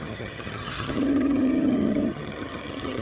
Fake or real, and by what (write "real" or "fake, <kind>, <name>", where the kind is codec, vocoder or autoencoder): fake, vocoder, HiFi-GAN